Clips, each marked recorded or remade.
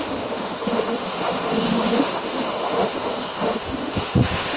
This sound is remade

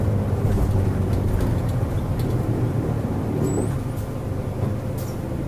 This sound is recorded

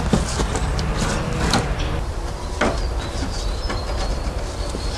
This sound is recorded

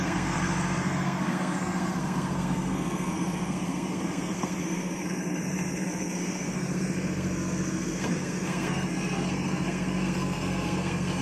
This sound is remade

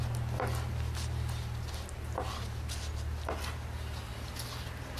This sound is recorded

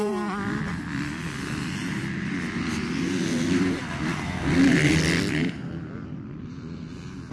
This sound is remade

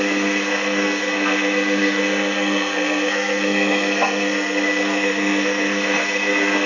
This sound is remade